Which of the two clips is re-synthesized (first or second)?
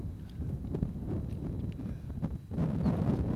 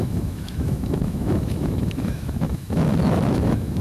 second